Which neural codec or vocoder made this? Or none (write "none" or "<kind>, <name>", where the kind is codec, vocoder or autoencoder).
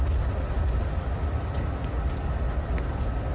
none